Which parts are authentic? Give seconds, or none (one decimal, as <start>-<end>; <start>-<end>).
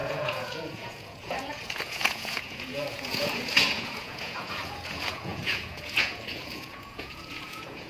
none